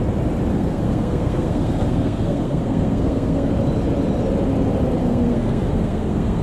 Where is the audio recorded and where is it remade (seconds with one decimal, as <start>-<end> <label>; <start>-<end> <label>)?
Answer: 0.0-0.5 recorded; 0.5-3.5 remade; 3.5-5.0 recorded; 5.0-6.4 remade